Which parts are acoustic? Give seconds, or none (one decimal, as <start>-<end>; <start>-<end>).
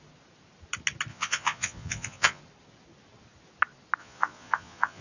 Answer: 0.0-1.1; 2.4-4.0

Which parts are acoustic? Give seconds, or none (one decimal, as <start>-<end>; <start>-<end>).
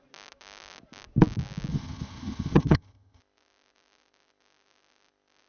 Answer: 0.0-1.7; 3.2-5.5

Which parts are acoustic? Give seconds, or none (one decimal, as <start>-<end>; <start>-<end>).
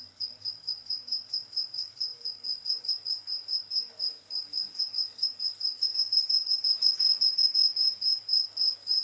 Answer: none